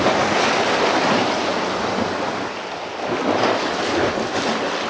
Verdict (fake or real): real